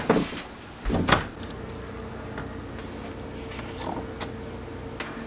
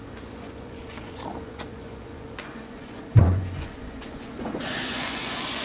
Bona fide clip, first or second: first